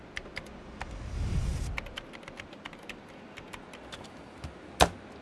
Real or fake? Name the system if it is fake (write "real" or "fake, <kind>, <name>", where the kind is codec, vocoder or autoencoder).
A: real